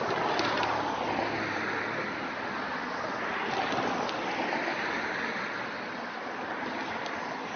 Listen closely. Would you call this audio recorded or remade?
recorded